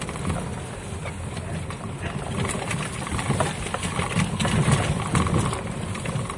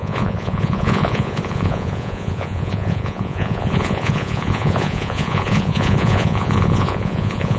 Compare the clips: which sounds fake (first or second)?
second